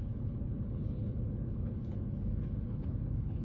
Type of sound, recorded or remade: remade